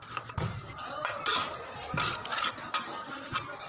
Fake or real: real